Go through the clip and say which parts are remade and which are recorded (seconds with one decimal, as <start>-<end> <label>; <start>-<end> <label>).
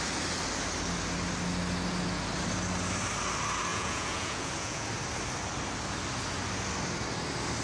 0.0-3.7 recorded; 3.7-4.9 remade; 4.9-7.6 recorded